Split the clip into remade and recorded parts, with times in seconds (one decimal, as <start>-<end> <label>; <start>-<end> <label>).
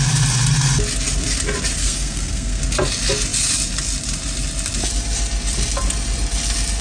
0.0-1.8 recorded; 1.8-2.6 remade; 2.6-6.8 recorded